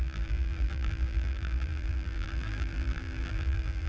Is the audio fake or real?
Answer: fake